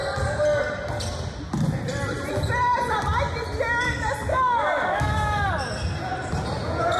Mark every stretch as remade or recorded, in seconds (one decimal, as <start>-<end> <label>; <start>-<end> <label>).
0.0-4.3 recorded; 4.3-5.5 remade; 5.5-7.0 recorded